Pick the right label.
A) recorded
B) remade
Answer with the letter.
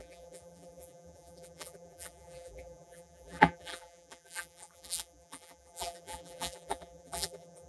B